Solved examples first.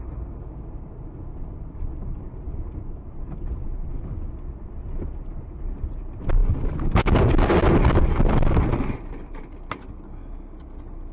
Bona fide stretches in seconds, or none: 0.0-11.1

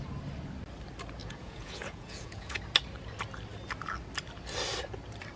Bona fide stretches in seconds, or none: 0.0-1.2; 2.6-5.4